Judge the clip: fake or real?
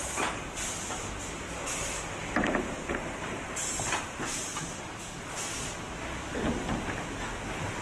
real